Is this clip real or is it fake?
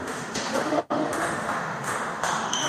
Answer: fake